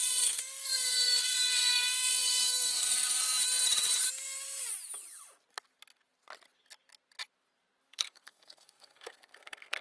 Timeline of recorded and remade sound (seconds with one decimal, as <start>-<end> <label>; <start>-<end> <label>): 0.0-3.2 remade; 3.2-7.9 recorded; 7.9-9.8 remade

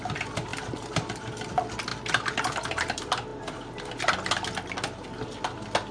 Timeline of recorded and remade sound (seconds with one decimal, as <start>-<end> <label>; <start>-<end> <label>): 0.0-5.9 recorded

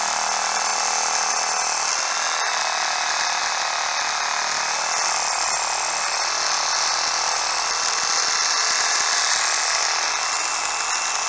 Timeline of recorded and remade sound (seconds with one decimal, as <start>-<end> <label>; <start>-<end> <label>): 0.0-11.3 recorded

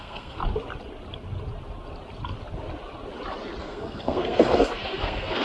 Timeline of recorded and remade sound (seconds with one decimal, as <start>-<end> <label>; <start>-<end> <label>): 0.0-0.4 remade; 0.4-3.6 recorded; 3.6-5.4 remade

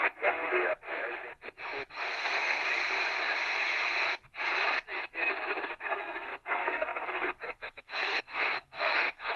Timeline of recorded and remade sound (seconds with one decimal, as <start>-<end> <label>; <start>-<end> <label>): 0.0-0.6 remade; 0.6-1.9 recorded; 1.9-2.6 remade; 2.6-5.8 recorded; 5.8-9.4 remade

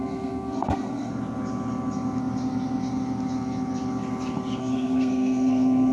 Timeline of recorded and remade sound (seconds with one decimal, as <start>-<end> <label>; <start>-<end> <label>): 0.0-1.1 remade; 1.1-4.6 recorded; 4.6-5.9 remade